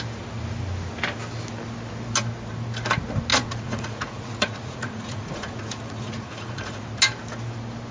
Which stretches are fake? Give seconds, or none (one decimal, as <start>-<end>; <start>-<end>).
3.3-7.0